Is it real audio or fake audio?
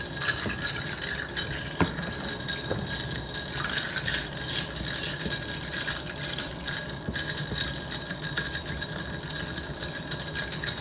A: real